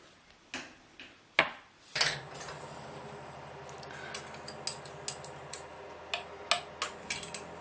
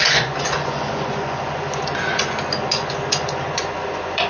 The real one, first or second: first